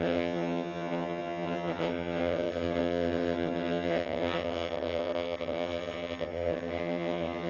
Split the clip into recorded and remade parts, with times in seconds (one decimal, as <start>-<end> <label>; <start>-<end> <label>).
0.0-7.5 remade